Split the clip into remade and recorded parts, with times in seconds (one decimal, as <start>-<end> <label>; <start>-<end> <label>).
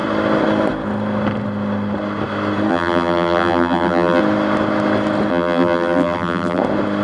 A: 0.0-2.7 recorded; 2.7-4.2 remade; 4.2-5.3 recorded; 5.3-6.6 remade; 6.6-7.0 recorded